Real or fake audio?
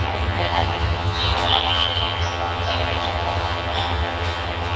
fake